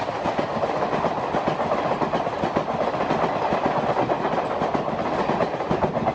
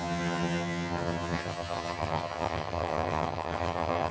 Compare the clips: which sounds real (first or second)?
first